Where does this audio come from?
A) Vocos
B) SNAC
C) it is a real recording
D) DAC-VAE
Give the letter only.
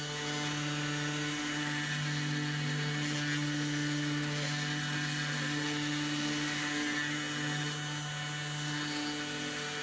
C